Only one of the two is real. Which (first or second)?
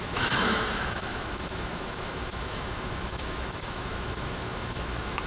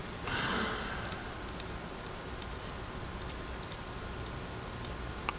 second